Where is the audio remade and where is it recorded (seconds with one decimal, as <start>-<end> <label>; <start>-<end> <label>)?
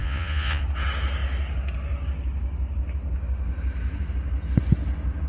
0.0-0.6 remade; 0.6-5.3 recorded